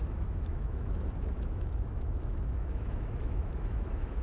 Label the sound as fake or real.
fake